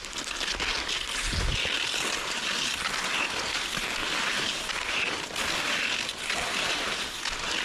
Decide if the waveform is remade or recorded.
recorded